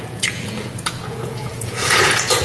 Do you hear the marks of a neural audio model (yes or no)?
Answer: yes